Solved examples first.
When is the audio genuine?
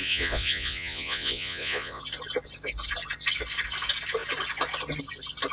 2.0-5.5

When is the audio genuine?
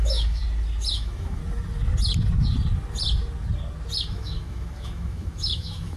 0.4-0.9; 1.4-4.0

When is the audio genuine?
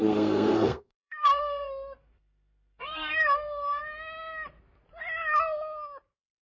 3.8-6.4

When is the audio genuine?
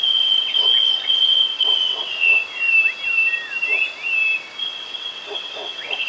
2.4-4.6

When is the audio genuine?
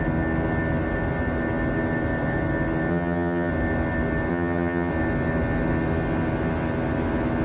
0.0-2.9; 3.5-4.3; 4.9-7.4